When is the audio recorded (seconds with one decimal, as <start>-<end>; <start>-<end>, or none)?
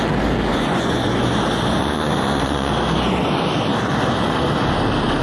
0.0-0.5; 1.4-1.8; 2.7-5.2